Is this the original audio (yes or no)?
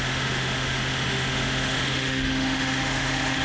no